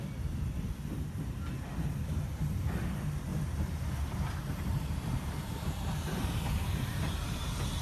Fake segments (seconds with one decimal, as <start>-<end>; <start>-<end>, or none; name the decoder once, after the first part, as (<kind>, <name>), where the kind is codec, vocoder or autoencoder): 3.3-7.8 (vocoder, BigVGAN v2)